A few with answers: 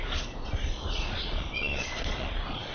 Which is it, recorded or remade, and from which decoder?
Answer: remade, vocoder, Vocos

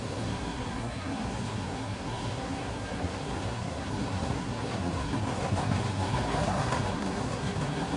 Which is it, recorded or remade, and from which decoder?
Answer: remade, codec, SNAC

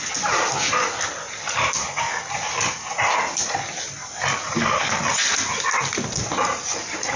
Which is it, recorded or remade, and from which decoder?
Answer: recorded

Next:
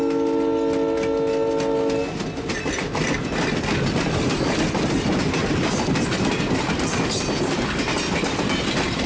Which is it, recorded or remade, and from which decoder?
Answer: recorded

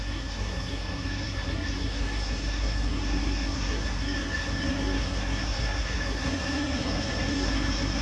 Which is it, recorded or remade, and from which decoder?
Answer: remade, codec, SNAC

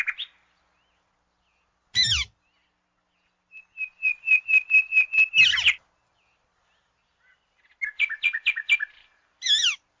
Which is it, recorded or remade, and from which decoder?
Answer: recorded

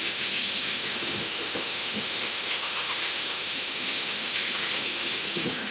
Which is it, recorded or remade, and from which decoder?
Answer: remade, autoencoder, DAC-VAE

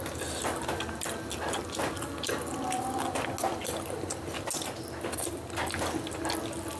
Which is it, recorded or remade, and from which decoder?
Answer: recorded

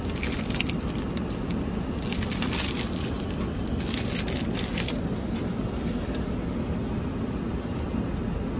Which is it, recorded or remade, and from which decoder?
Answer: recorded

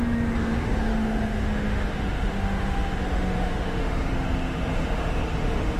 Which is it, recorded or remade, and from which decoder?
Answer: remade, autoencoder, DAC-VAE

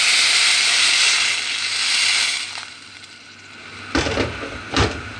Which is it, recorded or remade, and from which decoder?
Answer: recorded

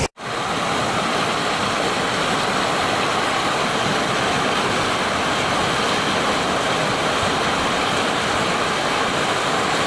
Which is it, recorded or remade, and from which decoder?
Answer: recorded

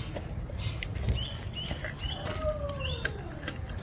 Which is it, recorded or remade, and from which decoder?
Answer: recorded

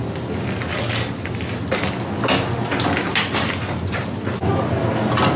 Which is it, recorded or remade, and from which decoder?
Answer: recorded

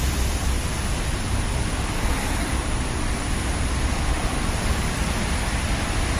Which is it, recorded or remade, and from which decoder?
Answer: remade, vocoder, BigVGAN v2